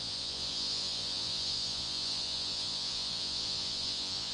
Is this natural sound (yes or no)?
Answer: no